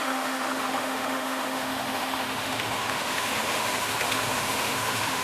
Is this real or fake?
fake